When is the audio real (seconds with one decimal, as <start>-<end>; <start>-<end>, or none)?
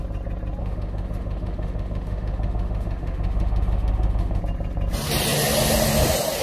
0.0-0.6; 4.4-6.4